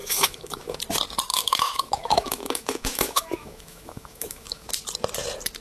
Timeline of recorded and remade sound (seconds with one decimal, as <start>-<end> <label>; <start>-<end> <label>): 0.0-0.8 remade; 0.8-1.3 recorded; 1.3-4.7 remade; 4.7-5.6 recorded